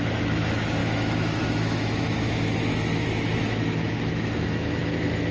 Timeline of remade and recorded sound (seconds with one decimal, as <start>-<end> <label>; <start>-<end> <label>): 0.0-5.3 remade